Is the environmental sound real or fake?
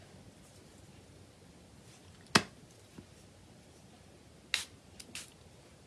real